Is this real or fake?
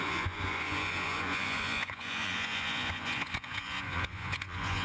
fake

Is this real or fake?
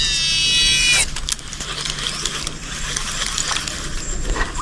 real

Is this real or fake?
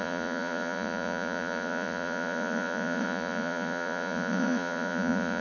fake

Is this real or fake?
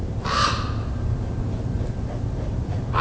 real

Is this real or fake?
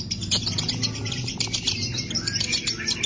real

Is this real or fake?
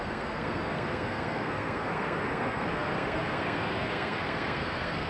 fake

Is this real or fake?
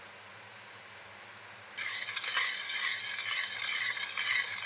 real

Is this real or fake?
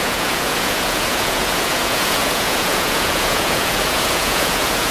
fake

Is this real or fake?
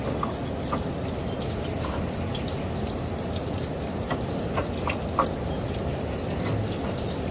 real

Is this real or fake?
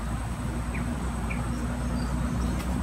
real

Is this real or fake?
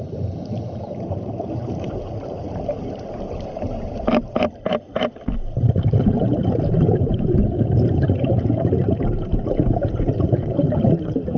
fake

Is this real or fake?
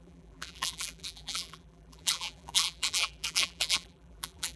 fake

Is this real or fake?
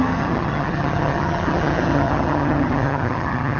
fake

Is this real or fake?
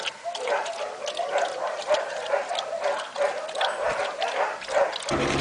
real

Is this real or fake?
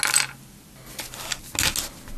real